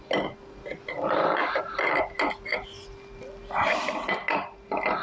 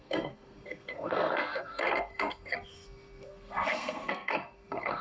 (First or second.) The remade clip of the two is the second